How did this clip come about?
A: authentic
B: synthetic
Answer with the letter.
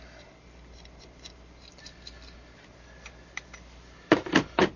A